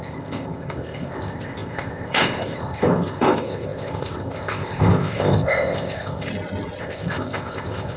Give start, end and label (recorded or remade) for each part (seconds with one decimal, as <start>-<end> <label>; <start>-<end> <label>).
0.0-6.3 remade; 6.3-6.8 recorded; 6.8-8.0 remade